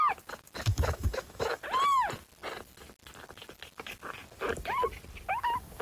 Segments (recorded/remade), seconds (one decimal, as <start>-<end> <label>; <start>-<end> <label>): 0.0-0.7 recorded; 0.7-1.6 remade; 1.6-5.8 recorded